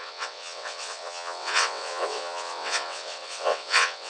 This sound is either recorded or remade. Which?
remade